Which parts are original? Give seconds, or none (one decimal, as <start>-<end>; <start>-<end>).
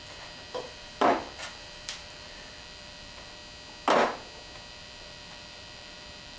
3.4-4.7